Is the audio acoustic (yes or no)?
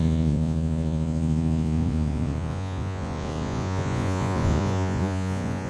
no